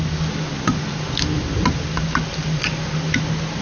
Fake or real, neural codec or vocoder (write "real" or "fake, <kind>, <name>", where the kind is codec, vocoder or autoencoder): real